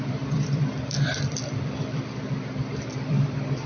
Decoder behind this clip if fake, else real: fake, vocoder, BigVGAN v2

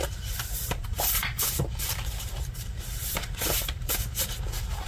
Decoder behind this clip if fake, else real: fake, vocoder, BigVGAN v2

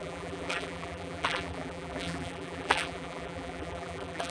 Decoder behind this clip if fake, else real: fake, vocoder, BigVGAN v2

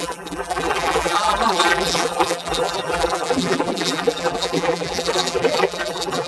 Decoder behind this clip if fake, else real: fake, vocoder, BigVGAN v2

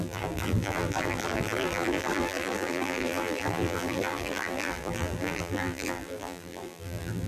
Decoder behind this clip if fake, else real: fake, vocoder, BigVGAN v2